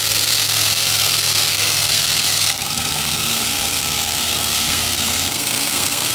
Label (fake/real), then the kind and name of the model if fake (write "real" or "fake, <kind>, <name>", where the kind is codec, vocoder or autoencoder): fake, codec, SNAC